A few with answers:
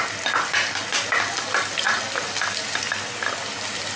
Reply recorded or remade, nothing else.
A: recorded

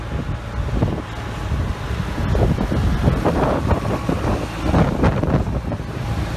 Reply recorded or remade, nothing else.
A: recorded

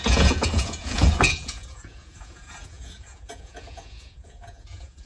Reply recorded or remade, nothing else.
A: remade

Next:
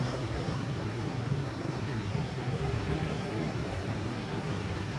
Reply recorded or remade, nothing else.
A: remade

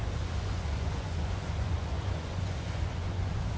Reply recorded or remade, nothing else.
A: remade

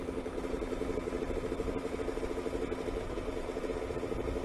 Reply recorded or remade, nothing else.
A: recorded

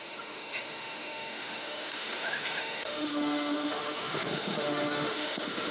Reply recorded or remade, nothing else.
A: remade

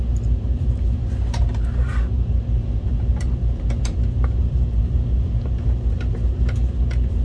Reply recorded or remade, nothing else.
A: remade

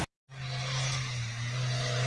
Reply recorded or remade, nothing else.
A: recorded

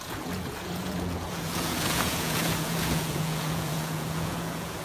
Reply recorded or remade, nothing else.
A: remade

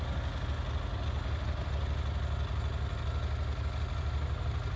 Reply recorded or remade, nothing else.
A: recorded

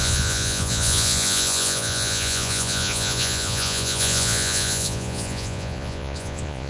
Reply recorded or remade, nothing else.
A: remade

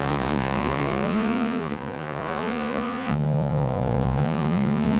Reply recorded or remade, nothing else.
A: remade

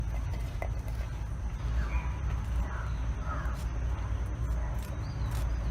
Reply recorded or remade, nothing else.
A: recorded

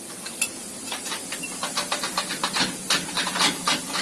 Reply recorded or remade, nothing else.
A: recorded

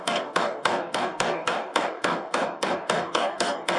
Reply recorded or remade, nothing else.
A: remade